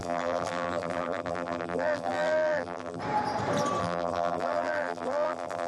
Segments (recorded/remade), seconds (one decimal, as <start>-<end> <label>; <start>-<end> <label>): 0.0-3.0 remade; 3.0-3.8 recorded; 3.8-5.7 remade